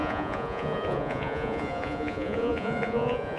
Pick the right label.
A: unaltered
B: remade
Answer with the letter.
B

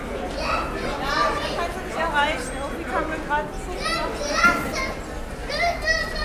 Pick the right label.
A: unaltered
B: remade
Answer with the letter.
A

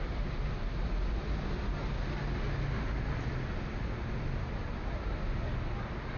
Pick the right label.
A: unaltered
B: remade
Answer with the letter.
A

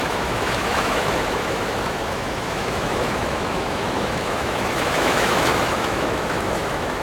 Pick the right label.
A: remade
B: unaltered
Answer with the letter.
A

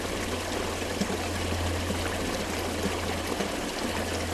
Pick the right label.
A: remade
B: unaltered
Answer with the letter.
B